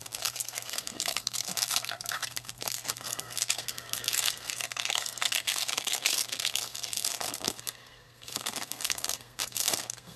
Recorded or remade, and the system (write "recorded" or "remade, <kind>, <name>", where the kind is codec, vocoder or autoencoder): remade, codec, SNAC